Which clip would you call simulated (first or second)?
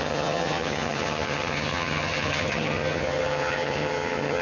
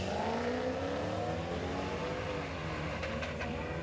first